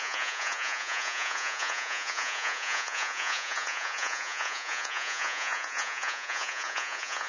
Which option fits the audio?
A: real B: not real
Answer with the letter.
B